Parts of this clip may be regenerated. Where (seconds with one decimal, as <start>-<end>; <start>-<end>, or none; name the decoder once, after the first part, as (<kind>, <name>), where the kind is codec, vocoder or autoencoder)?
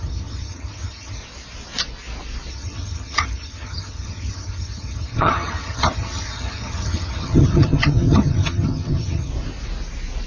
0.0-1.2 (vocoder, HiFi-GAN); 2.5-9.3